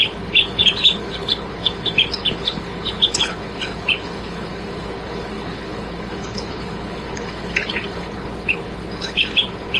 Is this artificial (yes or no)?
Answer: yes